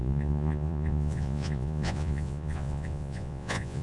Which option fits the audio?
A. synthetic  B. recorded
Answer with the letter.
A